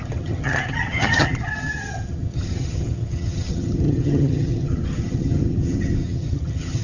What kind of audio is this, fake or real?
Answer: fake